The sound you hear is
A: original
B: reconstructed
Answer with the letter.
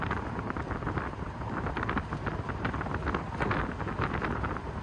A